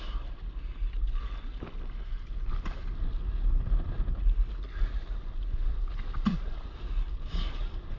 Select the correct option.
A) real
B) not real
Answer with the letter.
A